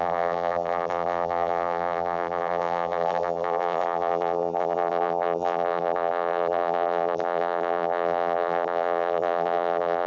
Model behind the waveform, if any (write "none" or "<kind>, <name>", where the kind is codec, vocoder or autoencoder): vocoder, BigVGAN v2